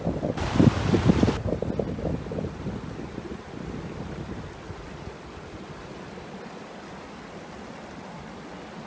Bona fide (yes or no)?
yes